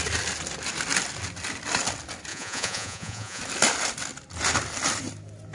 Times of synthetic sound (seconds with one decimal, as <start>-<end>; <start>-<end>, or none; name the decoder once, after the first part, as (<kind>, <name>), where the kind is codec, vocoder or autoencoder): 2.3-3.4 (vocoder, Vocos)